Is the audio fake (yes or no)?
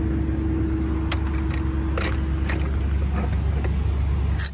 no